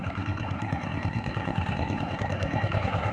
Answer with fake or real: fake